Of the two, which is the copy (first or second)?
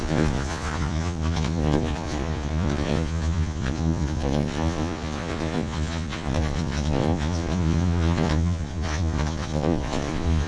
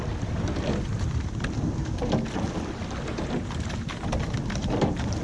first